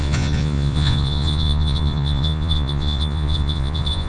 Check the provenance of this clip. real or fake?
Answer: fake